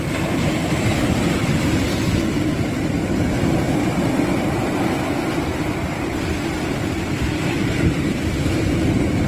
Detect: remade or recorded recorded